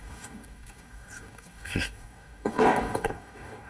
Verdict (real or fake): fake